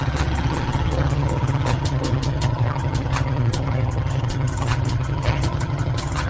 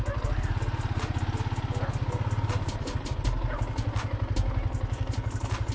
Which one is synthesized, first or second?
first